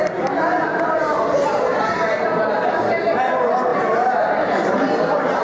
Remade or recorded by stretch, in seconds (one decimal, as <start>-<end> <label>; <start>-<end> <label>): 0.0-0.7 recorded; 0.7-3.3 remade; 3.3-3.7 recorded; 3.7-5.4 remade